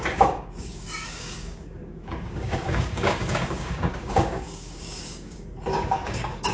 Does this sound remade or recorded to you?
remade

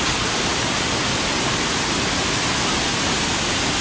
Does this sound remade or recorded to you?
recorded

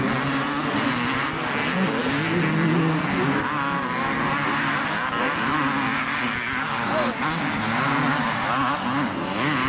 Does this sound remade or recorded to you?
recorded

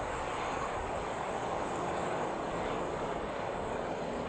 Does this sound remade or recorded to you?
remade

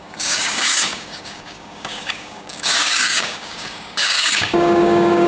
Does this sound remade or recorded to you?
remade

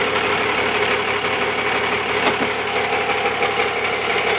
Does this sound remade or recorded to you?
recorded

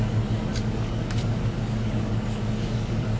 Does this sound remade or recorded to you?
remade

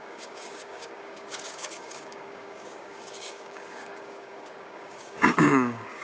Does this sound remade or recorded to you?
remade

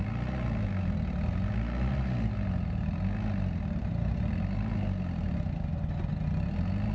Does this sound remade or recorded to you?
recorded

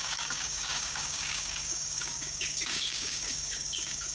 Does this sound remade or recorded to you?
remade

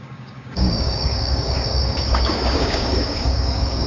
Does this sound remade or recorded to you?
remade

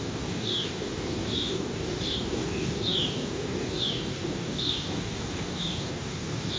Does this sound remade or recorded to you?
remade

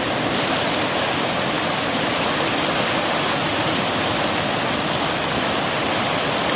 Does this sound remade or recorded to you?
recorded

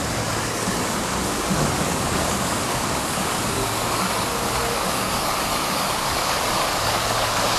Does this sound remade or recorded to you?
remade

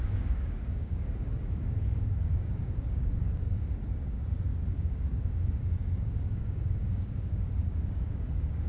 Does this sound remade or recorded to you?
remade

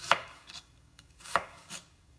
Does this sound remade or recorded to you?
remade